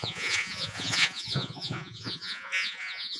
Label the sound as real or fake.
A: fake